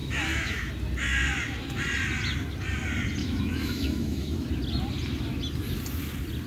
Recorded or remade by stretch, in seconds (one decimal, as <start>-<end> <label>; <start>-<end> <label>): 0.0-0.7 remade; 0.7-3.2 recorded; 3.2-4.5 remade; 4.5-6.5 recorded